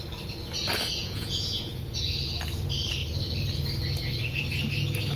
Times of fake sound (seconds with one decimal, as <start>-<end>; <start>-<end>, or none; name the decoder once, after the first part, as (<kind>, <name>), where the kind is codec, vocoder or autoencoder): 1.0-1.8 (vocoder, Vocos)